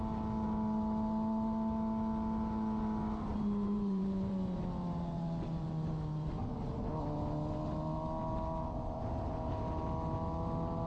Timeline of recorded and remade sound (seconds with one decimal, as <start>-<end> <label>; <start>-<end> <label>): 0.0-3.3 recorded; 3.3-6.3 remade; 6.3-10.9 recorded